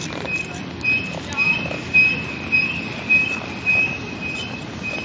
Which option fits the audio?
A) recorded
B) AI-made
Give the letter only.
A